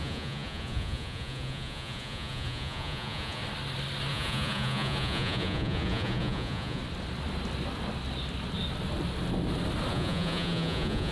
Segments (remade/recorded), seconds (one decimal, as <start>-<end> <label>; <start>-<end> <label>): 0.0-3.4 remade; 3.4-4.1 recorded; 4.1-6.8 remade; 6.8-9.9 recorded; 9.9-11.1 remade